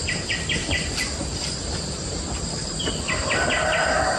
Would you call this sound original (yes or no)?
no